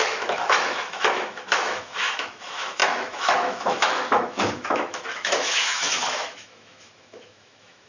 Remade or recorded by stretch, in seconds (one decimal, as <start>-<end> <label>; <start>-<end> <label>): 0.0-7.9 remade